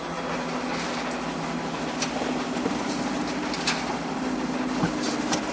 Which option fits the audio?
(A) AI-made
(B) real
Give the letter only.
B